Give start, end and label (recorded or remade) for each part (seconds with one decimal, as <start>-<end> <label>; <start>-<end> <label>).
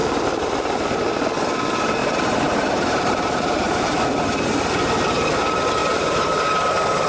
0.0-2.0 recorded; 2.0-3.8 remade; 3.8-5.8 recorded; 5.8-6.4 remade; 6.4-7.1 recorded